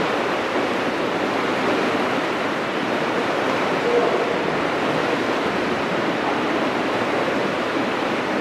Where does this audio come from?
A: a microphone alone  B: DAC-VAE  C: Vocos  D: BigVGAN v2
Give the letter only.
D